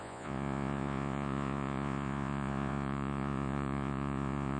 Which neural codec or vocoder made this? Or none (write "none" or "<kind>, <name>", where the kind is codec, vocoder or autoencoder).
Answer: vocoder, Vocos